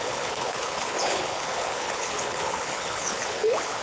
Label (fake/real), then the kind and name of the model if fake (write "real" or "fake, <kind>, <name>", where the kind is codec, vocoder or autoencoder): fake, codec, HILCodec